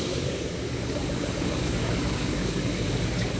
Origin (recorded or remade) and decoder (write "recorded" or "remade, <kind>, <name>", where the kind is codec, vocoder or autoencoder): remade, codec, DAC